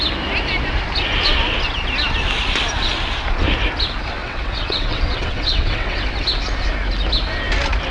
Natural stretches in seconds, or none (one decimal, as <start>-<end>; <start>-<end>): 0.0-4.2; 6.0-7.9